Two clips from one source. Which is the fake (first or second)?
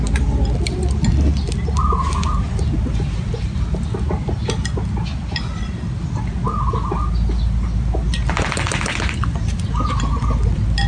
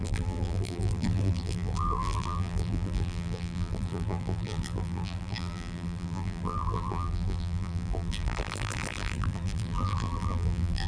second